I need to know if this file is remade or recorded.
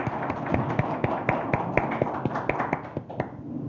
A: recorded